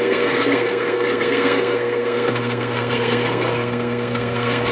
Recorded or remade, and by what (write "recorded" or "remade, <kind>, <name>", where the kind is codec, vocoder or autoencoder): remade, codec, SNAC